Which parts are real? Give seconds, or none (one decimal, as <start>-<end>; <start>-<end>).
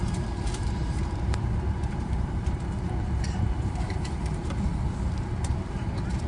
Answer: 4.7-6.3